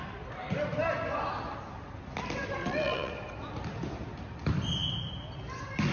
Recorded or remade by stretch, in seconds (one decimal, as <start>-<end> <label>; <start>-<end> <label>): 0.0-2.6 recorded; 2.6-3.1 remade; 3.1-5.9 recorded